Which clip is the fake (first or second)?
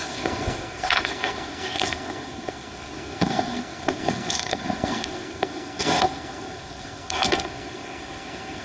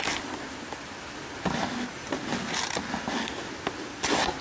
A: first